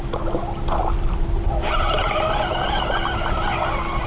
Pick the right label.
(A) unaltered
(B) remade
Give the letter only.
A